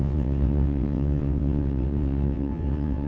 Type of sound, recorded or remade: remade